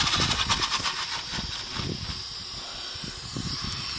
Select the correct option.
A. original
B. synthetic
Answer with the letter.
A